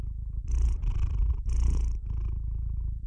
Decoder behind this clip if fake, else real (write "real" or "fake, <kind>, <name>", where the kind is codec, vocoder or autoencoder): fake, vocoder, BigVGAN v2